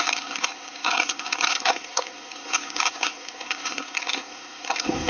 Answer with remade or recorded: remade